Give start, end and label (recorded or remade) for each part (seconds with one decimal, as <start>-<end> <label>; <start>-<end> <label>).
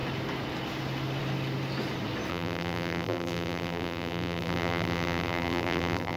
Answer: 0.0-2.3 recorded; 2.3-6.2 remade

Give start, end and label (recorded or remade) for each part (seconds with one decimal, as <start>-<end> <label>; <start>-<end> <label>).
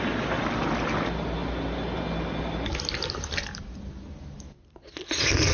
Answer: 0.0-5.5 recorded